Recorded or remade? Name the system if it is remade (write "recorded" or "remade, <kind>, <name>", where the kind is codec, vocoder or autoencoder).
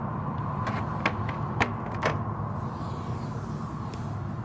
recorded